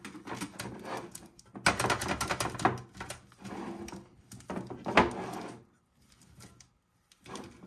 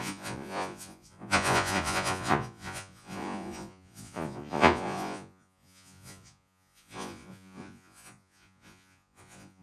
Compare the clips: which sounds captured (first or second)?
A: first